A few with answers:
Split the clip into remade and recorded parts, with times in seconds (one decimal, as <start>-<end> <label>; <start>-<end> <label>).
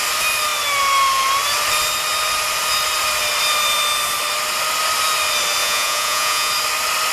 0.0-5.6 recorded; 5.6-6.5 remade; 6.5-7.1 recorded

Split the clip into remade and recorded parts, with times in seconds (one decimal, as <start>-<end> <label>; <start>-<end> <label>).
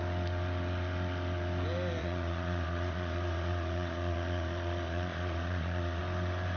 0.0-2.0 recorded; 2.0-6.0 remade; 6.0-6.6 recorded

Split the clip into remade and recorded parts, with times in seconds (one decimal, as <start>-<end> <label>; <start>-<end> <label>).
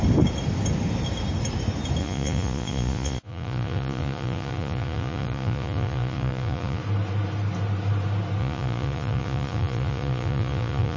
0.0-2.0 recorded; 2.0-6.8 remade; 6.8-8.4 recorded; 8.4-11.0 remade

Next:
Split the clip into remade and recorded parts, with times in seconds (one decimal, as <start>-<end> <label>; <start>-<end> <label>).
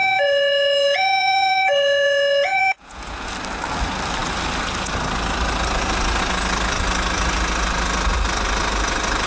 0.0-3.3 remade; 3.3-9.3 recorded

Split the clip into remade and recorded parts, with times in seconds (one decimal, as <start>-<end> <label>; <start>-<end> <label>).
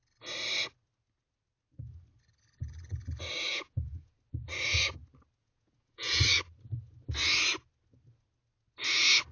0.0-3.5 recorded; 3.5-4.1 remade; 4.1-5.4 recorded; 5.4-6.2 remade; 6.2-9.3 recorded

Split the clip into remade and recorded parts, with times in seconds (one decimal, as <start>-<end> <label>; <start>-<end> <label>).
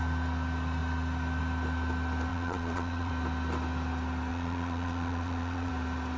0.0-2.3 recorded; 2.3-3.1 remade; 3.1-4.3 recorded; 4.3-5.7 remade; 5.7-6.2 recorded